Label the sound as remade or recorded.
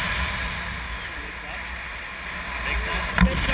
recorded